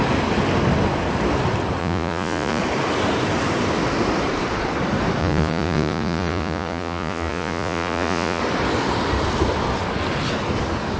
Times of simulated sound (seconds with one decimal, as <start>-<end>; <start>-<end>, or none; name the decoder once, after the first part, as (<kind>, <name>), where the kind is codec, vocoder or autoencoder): 1.8-2.6 (vocoder, Vocos); 5.2-8.4